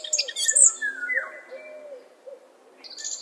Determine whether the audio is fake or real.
real